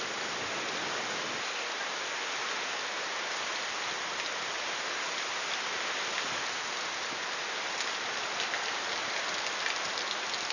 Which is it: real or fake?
real